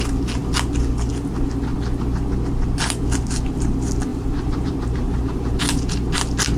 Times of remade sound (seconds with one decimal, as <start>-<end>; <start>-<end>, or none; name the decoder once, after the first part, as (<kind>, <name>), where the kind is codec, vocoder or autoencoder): 4.1-5.6 (vocoder, BigVGAN v2)